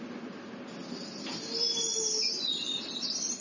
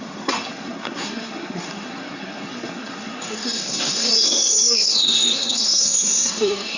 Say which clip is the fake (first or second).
second